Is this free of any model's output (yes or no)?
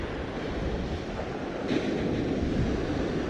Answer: yes